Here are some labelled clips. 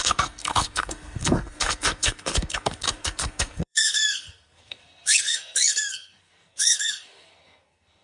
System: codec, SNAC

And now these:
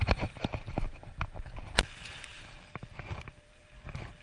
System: vocoder, BigVGAN v2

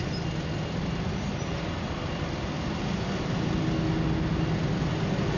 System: none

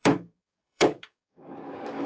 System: codec, DAC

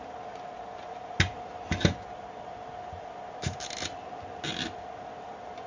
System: none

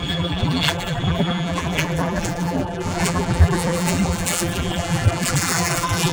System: vocoder, BigVGAN v2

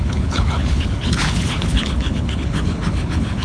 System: codec, HILCodec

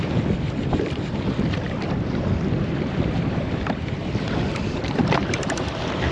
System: vocoder, BigVGAN v2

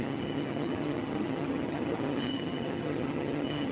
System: vocoder, HiFi-GAN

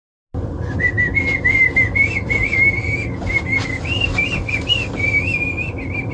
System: none